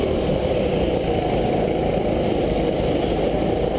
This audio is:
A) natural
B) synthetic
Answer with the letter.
A